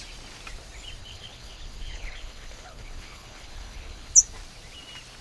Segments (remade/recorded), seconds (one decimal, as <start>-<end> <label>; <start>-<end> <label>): 0.0-1.0 recorded; 1.0-4.1 remade; 4.1-5.2 recorded

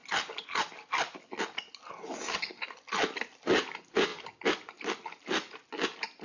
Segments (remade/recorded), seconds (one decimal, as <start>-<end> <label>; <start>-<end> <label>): 0.0-6.2 recorded

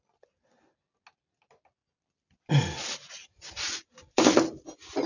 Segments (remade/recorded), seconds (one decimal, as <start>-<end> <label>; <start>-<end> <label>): 0.0-5.1 recorded

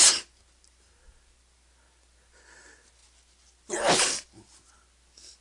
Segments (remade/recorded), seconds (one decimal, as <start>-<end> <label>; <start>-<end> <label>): 0.0-5.4 recorded